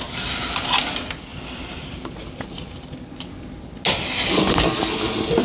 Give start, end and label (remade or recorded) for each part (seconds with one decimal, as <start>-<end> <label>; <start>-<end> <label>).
0.0-5.4 recorded